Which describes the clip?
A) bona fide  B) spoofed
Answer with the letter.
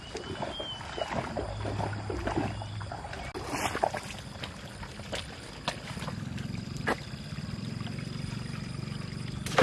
A